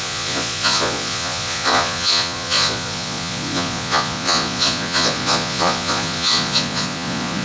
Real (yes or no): no